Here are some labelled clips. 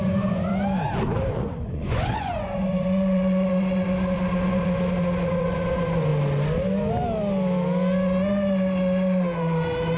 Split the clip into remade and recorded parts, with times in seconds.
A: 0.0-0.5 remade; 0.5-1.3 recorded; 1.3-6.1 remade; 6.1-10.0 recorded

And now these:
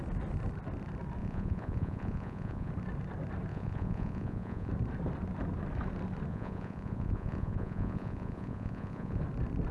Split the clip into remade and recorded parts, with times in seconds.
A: 0.0-1.2 recorded; 1.2-2.7 remade; 2.7-3.5 recorded; 3.5-4.7 remade; 4.7-6.3 recorded; 6.3-9.2 remade; 9.2-9.7 recorded

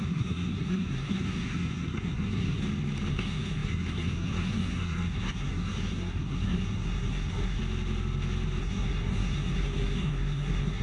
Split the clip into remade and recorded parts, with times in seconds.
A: 0.0-2.6 remade; 2.6-3.1 recorded; 3.1-7.6 remade; 7.6-8.6 recorded; 8.6-10.8 remade

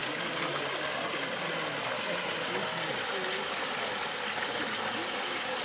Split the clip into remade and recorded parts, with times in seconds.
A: 0.0-5.6 recorded

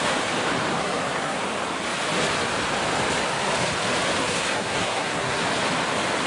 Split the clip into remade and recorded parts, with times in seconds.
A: 0.0-0.8 recorded; 0.8-1.4 remade; 1.4-4.2 recorded; 4.2-5.4 remade; 5.4-6.3 recorded

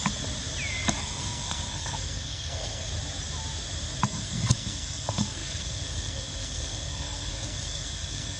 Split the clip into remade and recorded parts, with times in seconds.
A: 0.0-1.0 recorded; 1.0-2.9 remade; 2.9-4.0 recorded; 4.0-8.4 remade